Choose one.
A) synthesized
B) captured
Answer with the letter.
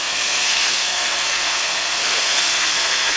A